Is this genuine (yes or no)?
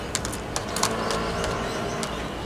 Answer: yes